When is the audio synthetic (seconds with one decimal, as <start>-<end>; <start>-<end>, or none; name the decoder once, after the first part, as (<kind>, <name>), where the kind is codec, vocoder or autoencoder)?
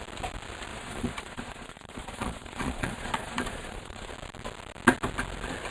0.7-4.1 (vocoder, Vocos)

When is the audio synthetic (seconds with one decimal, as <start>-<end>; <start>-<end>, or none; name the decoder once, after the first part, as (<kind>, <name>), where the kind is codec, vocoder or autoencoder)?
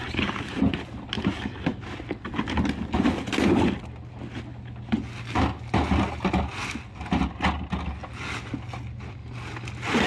none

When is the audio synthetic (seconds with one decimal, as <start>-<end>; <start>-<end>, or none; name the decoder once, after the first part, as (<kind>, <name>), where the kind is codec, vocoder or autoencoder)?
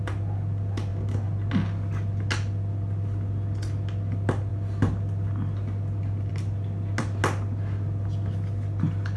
none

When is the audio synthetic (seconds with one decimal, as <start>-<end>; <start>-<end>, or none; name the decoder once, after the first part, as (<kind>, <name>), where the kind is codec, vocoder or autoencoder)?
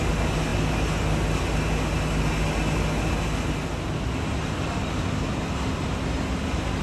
none